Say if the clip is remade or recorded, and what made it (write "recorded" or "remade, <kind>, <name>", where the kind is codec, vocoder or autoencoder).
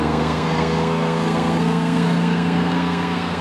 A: remade, codec, SNAC